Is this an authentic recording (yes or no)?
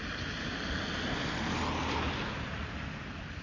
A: yes